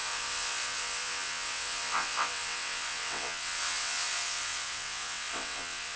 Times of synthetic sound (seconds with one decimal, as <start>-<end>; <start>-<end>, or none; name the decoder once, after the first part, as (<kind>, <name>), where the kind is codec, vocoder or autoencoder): 0.0-6.0 (vocoder, WaveNeXt)